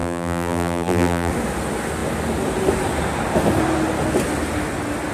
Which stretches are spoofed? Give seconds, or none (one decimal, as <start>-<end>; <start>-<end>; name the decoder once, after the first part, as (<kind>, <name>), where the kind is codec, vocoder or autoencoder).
0.0-1.3 (vocoder, BigVGAN v2)